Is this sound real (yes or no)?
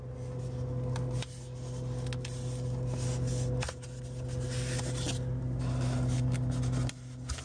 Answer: yes